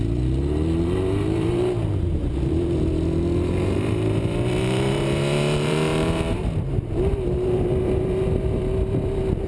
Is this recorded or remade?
remade